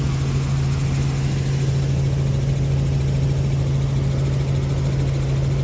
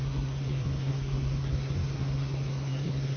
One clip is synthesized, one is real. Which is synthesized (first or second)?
second